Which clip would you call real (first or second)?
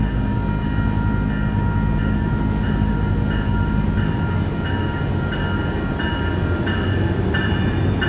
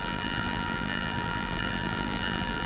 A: first